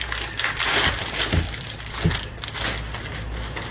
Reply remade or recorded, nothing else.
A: recorded